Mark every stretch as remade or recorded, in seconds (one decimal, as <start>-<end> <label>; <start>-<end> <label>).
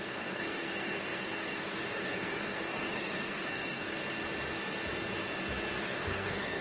0.0-4.0 remade; 4.0-5.8 recorded; 5.8-6.6 remade